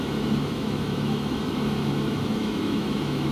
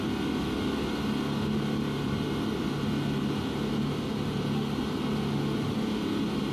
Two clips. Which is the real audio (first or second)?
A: second